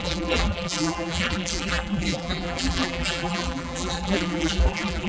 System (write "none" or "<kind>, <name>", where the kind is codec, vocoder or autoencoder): vocoder, BigVGAN v2